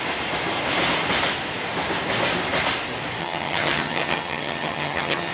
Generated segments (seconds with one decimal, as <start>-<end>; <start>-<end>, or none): 3.2-5.3